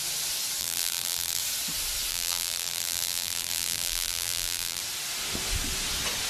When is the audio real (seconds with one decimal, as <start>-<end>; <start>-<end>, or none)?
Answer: 0.0-0.6; 1.4-2.1; 4.8-6.3